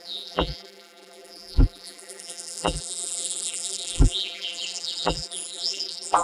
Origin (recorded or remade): remade